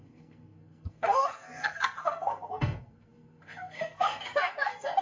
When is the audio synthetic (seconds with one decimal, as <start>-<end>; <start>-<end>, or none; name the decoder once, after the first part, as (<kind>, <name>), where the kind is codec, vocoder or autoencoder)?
0.0-5.0 (codec, SNAC)